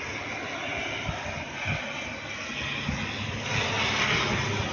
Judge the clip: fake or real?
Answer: real